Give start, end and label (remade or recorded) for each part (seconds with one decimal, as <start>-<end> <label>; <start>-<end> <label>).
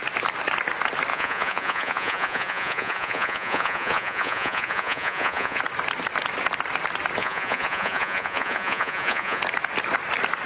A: 0.0-1.1 recorded; 1.1-5.6 remade; 5.6-7.2 recorded; 7.2-9.4 remade; 9.4-10.5 recorded